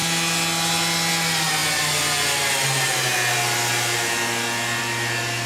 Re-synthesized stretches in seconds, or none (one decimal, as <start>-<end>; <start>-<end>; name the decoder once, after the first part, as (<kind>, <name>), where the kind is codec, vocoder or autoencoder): none